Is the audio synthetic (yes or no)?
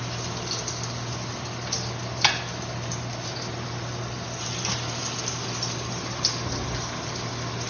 no